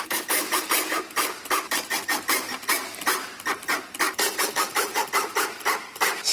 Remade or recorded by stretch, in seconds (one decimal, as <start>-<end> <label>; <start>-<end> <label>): 0.0-2.8 remade; 2.8-4.7 recorded; 4.7-6.3 remade